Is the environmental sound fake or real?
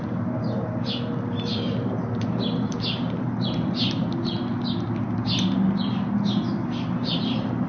real